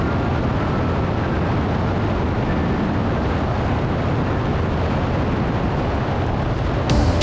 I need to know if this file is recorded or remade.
recorded